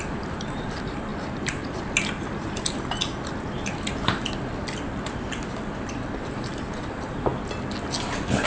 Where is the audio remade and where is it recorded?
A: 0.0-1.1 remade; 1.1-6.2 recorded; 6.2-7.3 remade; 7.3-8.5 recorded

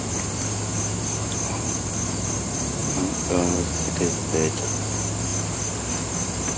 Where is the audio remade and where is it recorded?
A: 0.0-4.2 remade; 4.2-4.8 recorded; 4.8-6.6 remade

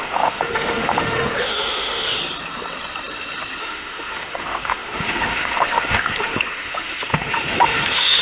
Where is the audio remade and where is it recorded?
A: 0.0-2.2 remade; 2.2-3.6 recorded; 3.6-8.2 remade

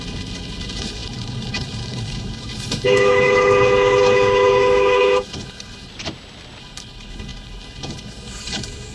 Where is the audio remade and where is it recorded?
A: 0.0-5.9 remade; 5.9-6.6 recorded; 6.6-8.9 remade

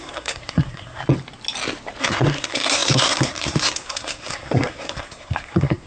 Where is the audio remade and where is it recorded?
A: 0.0-1.0 remade; 1.0-2.0 recorded; 2.0-5.9 remade